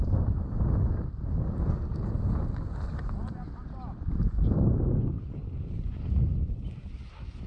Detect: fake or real real